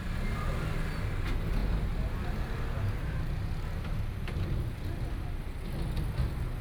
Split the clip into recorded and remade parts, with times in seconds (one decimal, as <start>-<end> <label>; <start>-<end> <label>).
0.0-6.6 recorded